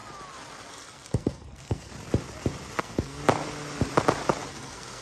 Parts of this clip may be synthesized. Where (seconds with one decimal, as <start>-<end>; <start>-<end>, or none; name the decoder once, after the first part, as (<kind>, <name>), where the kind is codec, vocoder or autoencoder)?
0.7-1.9 (codec, SNAC); 2.8-3.2; 4.5-5.0